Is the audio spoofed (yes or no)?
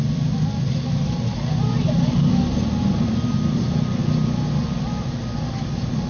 no